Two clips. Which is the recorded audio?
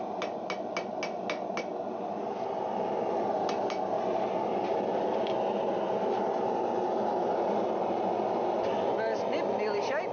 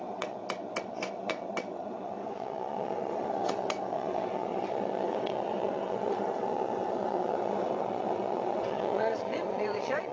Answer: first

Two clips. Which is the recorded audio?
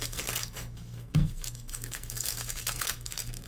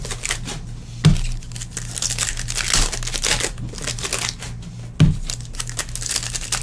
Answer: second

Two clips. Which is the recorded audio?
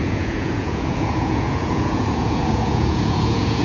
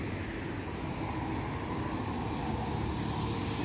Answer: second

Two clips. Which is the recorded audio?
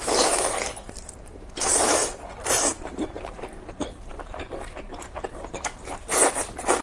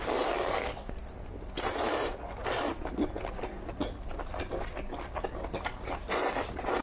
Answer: second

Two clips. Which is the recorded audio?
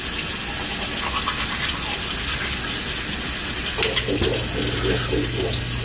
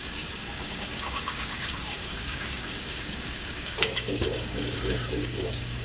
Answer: first